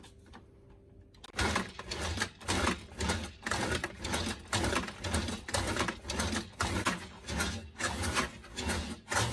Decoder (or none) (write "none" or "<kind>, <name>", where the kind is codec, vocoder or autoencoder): none